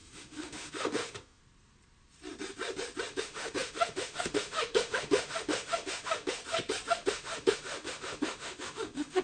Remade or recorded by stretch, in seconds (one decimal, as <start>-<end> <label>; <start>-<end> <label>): 0.0-1.4 remade; 1.4-3.1 recorded; 3.1-6.4 remade; 6.4-6.9 recorded; 6.9-9.2 remade